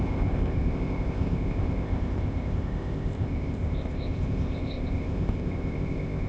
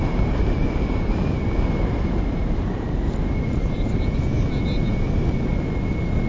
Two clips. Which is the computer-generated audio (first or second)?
first